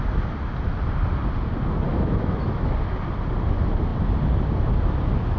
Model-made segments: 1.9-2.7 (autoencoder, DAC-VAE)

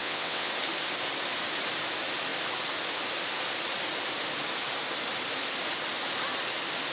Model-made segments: 0.0-0.5 (vocoder, WaveNeXt)